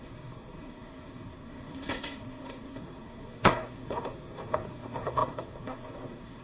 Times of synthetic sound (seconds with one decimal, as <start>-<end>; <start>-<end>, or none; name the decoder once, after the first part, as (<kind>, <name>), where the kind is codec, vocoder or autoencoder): 0.0-6.4 (codec, SNAC)